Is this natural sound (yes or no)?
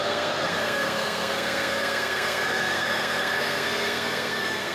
no